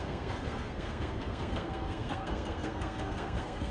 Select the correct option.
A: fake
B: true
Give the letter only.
A